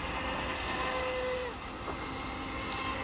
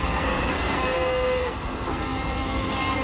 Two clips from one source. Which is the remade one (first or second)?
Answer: second